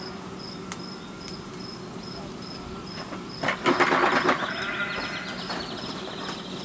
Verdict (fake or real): real